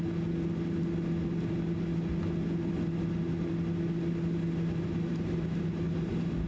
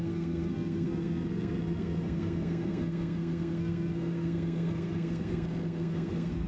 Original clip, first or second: first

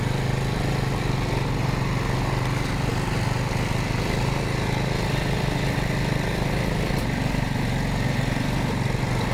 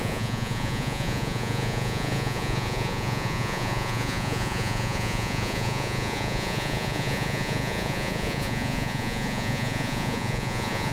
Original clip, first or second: first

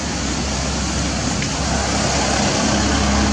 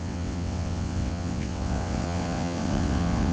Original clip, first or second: first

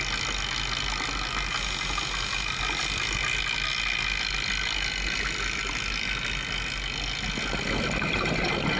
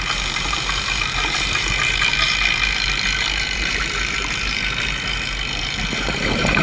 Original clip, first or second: first